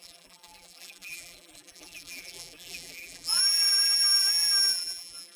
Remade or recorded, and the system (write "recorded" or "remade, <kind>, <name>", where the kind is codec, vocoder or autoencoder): remade, vocoder, BigVGAN v2